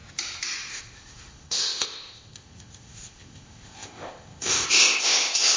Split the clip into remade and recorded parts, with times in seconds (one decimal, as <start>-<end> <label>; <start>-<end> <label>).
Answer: 0.0-0.7 recorded; 0.7-5.6 remade